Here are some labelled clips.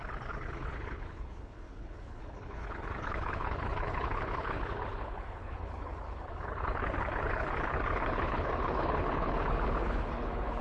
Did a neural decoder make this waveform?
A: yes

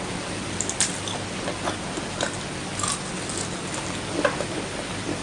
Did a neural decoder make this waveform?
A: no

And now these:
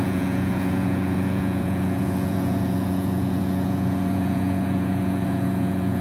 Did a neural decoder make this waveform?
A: yes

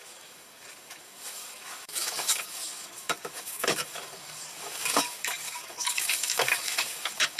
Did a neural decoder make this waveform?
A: yes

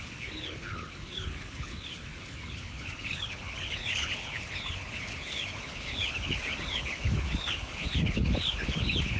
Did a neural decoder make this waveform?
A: yes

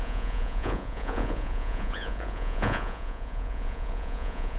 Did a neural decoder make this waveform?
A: yes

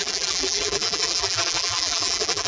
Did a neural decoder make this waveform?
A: yes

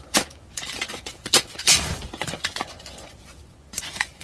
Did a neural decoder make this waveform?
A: yes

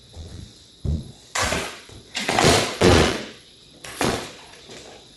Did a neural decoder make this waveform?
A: yes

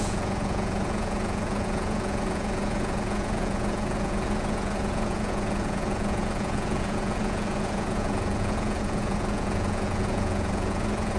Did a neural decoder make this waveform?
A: yes